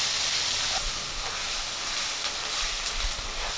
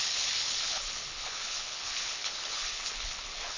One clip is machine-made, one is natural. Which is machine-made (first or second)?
second